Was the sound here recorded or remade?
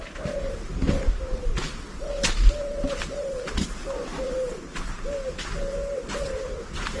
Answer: recorded